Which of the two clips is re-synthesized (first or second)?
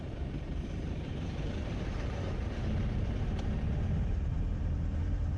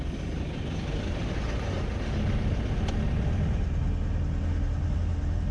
first